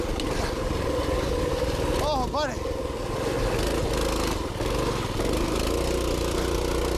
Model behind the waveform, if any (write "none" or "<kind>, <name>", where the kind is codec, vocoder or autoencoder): none